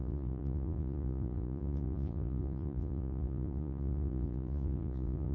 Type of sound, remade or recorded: remade